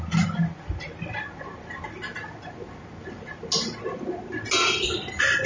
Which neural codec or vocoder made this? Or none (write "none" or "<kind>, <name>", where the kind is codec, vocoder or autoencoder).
none